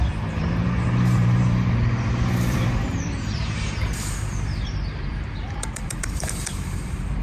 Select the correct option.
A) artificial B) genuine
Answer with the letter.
A